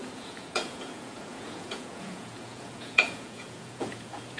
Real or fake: fake